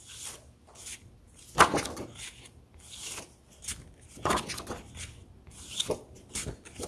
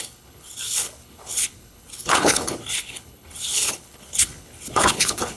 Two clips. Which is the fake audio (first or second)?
second